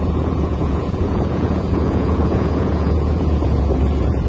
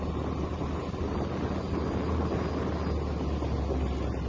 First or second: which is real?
second